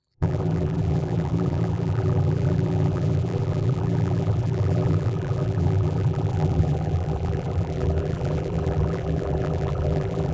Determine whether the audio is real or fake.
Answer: fake